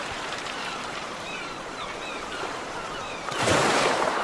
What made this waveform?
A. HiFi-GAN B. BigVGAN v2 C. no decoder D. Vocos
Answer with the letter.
B